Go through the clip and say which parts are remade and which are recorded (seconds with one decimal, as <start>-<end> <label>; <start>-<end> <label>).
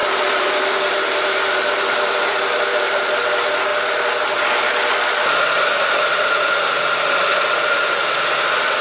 0.0-3.1 remade; 3.1-3.7 recorded; 3.7-4.2 remade; 4.2-8.8 recorded